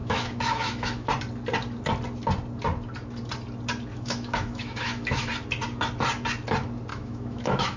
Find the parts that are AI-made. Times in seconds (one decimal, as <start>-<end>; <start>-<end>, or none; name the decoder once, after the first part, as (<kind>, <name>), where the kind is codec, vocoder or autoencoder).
0.0-1.1 (autoencoder, DAC-VAE); 3.9-5.3; 6.9-7.8